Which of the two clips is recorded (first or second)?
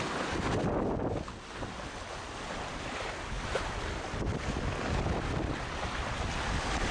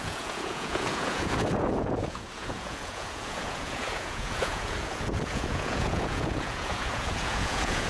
first